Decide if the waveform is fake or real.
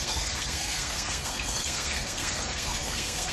fake